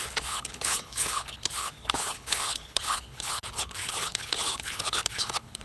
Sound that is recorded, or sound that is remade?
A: remade